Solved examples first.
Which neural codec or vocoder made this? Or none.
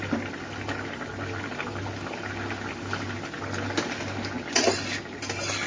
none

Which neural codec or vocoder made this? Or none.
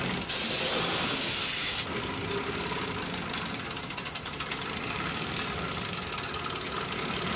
none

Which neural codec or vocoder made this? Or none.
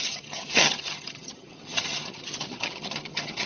vocoder, HiFi-GAN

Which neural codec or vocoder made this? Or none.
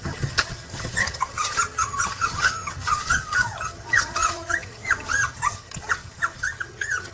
vocoder, HiFi-GAN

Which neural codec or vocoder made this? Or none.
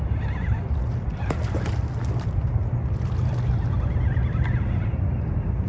none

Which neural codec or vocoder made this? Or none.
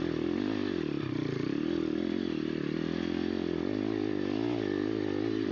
none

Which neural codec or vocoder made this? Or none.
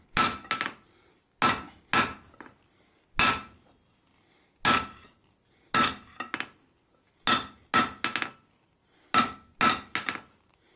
none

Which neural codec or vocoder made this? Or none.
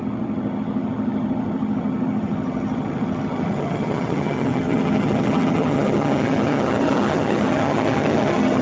vocoder, HiFi-GAN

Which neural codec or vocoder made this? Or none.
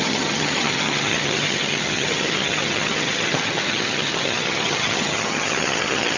vocoder, HiFi-GAN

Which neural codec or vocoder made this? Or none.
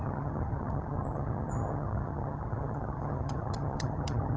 vocoder, HiFi-GAN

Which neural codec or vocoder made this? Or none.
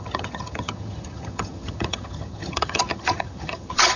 vocoder, HiFi-GAN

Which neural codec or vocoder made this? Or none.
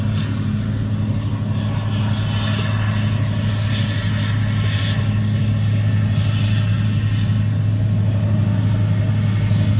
none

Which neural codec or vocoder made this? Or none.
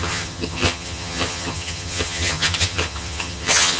vocoder, HiFi-GAN